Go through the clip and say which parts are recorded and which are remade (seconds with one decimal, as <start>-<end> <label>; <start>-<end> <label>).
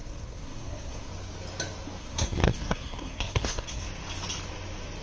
0.0-1.1 remade; 1.1-2.0 recorded; 2.0-3.9 remade; 3.9-5.0 recorded